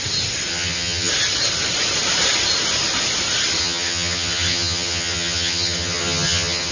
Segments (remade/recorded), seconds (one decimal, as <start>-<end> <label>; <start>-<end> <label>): 0.0-0.5 recorded; 0.5-1.1 remade; 1.1-3.6 recorded; 3.6-6.7 remade